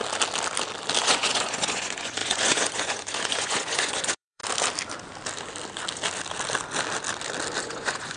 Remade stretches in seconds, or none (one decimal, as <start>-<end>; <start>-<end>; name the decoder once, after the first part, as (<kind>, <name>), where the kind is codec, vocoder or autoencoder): 1.0-4.4 (vocoder, Vocos); 7.6-8.2